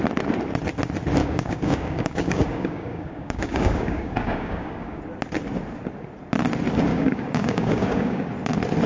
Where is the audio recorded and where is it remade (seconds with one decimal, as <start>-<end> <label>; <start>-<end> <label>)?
0.0-1.2 recorded; 1.2-5.0 remade; 5.0-6.9 recorded; 6.9-8.3 remade; 8.3-8.9 recorded

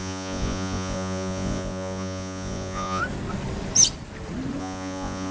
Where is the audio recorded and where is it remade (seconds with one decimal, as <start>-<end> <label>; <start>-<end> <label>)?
0.0-3.0 remade; 3.0-4.6 recorded; 4.6-5.3 remade

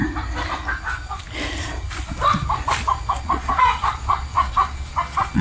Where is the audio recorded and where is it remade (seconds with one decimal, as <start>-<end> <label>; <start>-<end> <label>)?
0.0-3.2 recorded; 3.2-5.4 remade